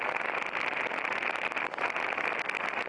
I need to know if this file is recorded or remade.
recorded